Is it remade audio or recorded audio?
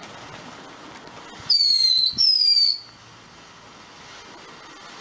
recorded